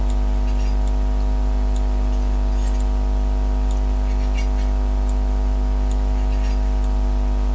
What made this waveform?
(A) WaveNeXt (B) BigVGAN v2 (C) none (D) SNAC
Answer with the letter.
C